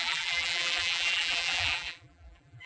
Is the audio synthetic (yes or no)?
yes